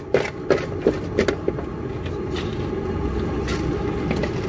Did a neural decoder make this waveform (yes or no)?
no